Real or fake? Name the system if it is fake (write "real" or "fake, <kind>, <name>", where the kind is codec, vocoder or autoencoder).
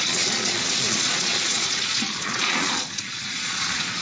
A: fake, vocoder, Vocos